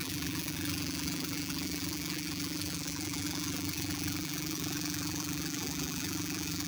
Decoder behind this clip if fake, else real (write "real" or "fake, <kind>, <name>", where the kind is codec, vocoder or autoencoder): fake, vocoder, BigVGAN v2